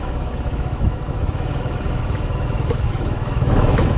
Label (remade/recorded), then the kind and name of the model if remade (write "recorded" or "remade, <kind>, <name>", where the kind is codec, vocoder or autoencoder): remade, autoencoder, DAC-VAE